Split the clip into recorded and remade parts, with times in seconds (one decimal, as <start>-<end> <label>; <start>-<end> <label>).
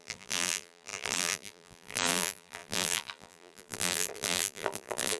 0.0-5.2 remade